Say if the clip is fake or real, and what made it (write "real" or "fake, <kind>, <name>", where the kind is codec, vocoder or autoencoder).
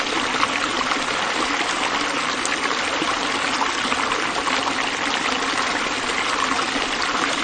real